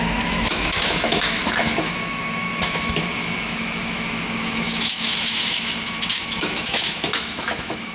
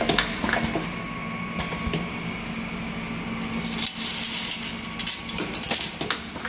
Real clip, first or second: second